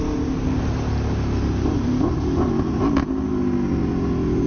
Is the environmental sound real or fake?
real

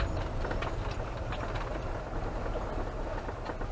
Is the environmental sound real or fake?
real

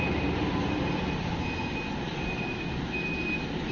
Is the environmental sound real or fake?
real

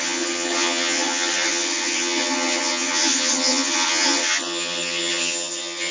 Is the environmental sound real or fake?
fake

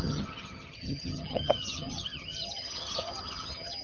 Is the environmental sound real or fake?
fake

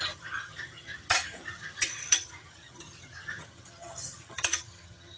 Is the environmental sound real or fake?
fake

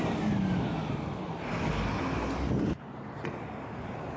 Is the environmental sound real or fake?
real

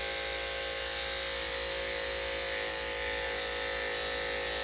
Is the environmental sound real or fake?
real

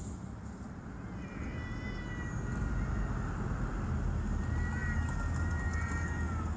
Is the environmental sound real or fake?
real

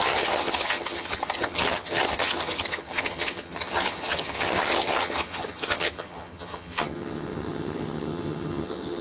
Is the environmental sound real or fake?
fake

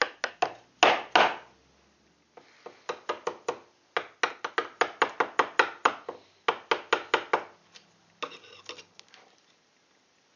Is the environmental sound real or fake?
real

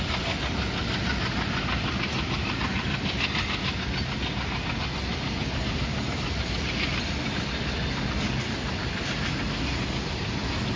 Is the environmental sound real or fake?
real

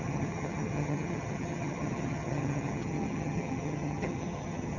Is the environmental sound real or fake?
fake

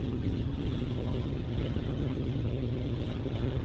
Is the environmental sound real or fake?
fake